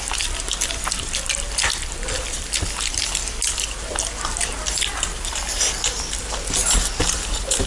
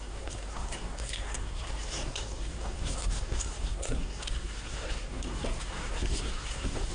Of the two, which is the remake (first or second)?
second